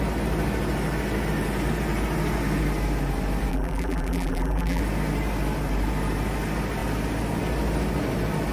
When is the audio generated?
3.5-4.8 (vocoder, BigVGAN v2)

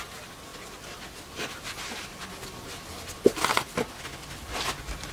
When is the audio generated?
none

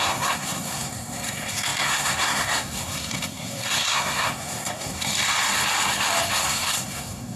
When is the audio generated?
0.0-5.1 (codec, SNAC); 6.4-7.4

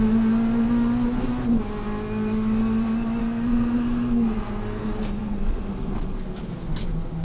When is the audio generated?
3.2-6.4 (codec, SNAC)

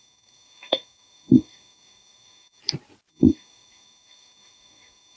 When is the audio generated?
0.0-2.6 (codec, DAC); 3.1-5.2

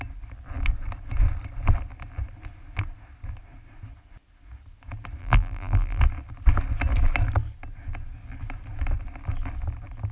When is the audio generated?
5.2-6.0 (vocoder, BigVGAN v2)

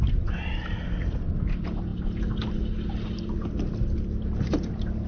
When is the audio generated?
none

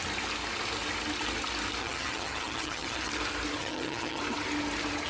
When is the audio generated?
1.8-3.1 (vocoder, HiFi-GAN); 3.6-4.2